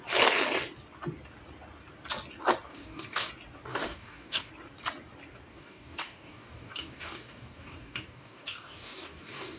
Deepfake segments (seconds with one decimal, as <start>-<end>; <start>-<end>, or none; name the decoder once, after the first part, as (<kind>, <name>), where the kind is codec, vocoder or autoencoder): 2.7-3.3 (codec, DAC); 3.7-4.5; 5.5-9.6